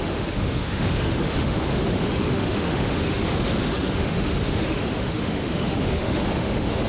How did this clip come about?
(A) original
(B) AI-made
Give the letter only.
B